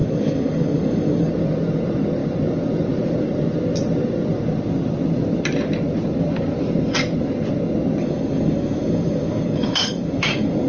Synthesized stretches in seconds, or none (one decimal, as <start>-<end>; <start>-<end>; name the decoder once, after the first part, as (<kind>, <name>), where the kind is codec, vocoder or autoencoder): 0.0-1.3 (codec, DAC); 8.0-10.7